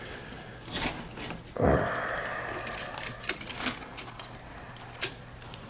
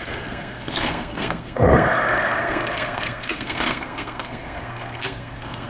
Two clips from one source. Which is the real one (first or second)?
first